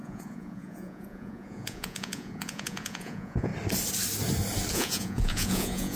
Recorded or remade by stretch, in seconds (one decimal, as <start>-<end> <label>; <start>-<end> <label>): 0.0-3.5 remade; 3.5-4.7 recorded; 4.7-6.0 remade